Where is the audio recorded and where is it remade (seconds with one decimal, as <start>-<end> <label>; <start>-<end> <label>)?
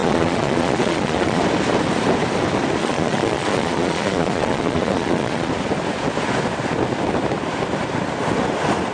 0.0-1.4 remade; 1.4-2.8 recorded; 2.8-5.5 remade; 5.5-8.9 recorded